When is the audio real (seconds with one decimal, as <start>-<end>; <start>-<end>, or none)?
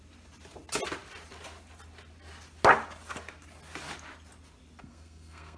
0.0-4.8